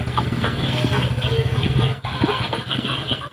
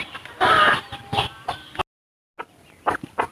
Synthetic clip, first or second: first